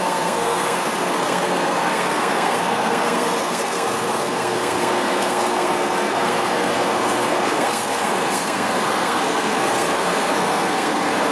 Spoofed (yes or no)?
yes